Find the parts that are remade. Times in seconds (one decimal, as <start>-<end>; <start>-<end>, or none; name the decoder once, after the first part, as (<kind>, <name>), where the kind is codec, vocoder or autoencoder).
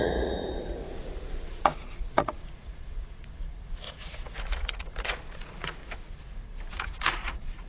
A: 0.0-5.8 (vocoder, Vocos); 6.7-7.7